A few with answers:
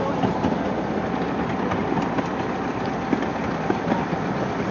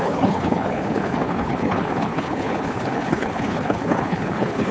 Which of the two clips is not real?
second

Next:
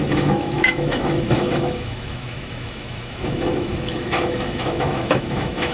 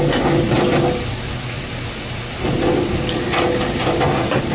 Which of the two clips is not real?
first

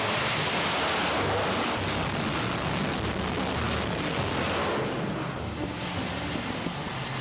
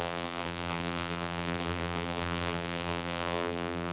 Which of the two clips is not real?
second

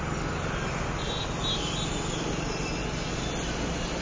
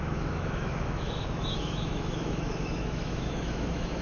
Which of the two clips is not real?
second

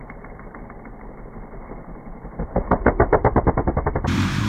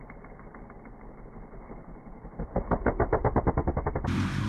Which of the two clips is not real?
first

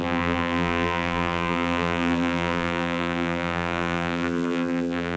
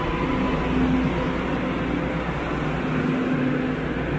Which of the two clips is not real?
first